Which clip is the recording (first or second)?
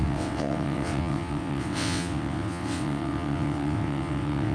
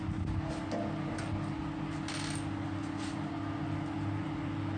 second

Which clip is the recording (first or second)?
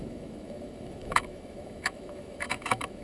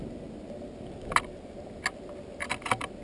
second